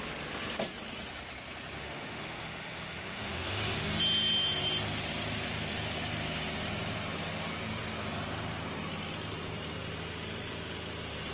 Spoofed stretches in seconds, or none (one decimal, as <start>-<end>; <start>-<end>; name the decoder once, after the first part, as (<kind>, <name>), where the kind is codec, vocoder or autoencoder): 1.8-4.0 (autoencoder, DAC-VAE)